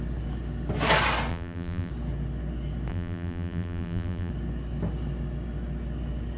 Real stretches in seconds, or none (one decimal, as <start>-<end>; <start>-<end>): 0.0-1.3; 1.9-2.9; 4.3-6.4